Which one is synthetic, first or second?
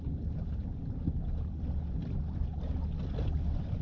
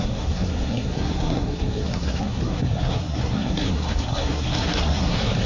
second